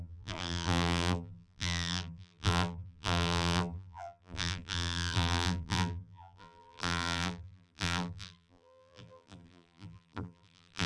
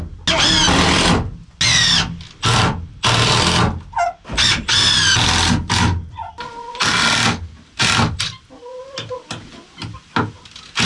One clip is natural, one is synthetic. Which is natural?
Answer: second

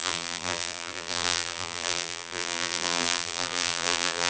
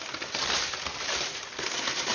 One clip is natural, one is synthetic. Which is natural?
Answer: second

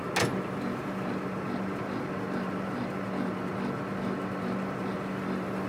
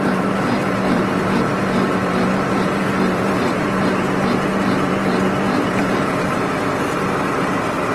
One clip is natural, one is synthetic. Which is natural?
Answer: first